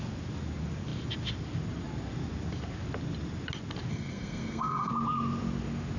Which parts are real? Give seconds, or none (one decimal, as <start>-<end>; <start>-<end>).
0.0-3.9; 4.9-6.0